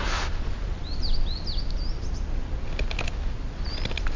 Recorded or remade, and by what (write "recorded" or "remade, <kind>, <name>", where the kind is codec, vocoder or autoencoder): recorded